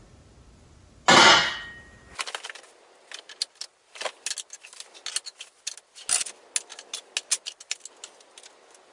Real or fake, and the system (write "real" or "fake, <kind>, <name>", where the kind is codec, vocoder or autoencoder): real